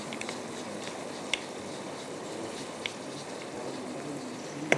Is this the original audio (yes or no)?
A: yes